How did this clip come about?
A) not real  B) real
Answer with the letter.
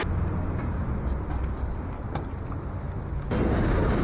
B